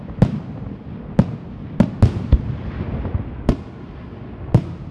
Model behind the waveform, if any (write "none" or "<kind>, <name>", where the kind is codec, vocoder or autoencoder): none